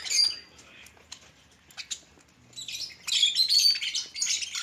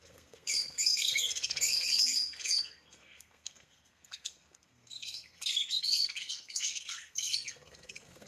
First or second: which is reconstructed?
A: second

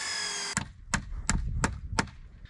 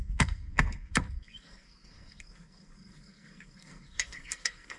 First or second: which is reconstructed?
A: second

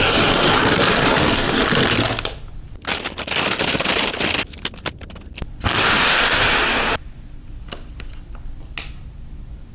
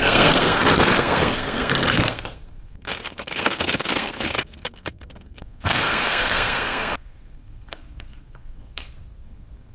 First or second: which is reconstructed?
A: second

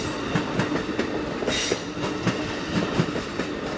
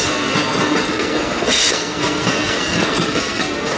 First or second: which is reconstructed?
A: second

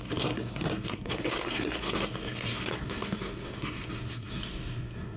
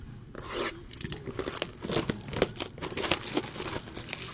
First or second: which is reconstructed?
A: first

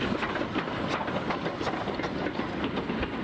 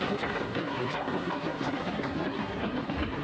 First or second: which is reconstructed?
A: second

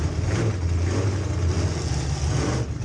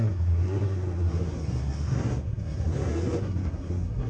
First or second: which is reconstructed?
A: second